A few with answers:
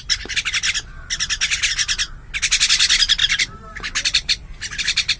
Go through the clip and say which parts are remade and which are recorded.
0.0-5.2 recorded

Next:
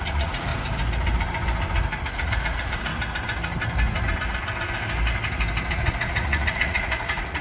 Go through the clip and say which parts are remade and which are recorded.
0.0-0.5 remade; 0.5-2.0 recorded; 2.0-2.9 remade; 2.9-5.7 recorded; 5.7-7.4 remade

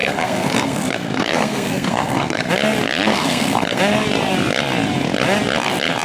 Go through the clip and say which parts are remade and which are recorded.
0.0-2.5 remade; 2.5-3.1 recorded; 3.1-3.8 remade; 3.8-6.0 recorded

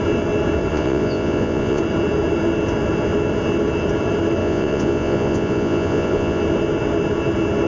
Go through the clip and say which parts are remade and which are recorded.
0.0-0.7 recorded; 0.7-1.8 remade; 1.8-4.4 recorded; 4.4-6.4 remade; 6.4-7.7 recorded